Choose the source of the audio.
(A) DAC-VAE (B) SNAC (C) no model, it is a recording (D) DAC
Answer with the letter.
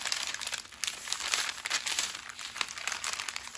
C